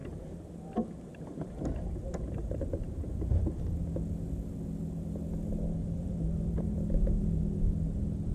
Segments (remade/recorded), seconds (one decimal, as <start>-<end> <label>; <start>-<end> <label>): 0.0-3.7 remade; 3.7-5.8 recorded; 5.8-7.4 remade; 7.4-8.3 recorded